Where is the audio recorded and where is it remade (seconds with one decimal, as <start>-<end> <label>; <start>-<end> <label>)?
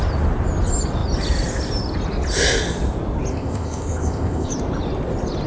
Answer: 0.0-3.3 recorded; 3.3-4.5 remade; 4.5-5.5 recorded